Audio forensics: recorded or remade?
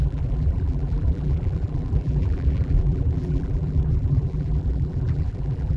remade